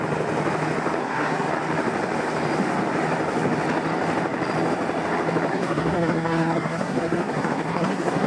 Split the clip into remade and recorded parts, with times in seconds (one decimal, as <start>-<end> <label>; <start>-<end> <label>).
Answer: 0.0-1.0 recorded; 1.0-1.5 remade; 1.5-5.5 recorded; 5.5-8.3 remade